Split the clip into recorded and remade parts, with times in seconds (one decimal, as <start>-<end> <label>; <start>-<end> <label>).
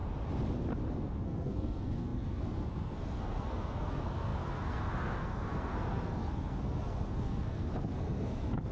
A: 0.0-0.9 recorded; 0.9-8.7 remade